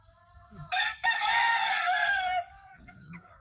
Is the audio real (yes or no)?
no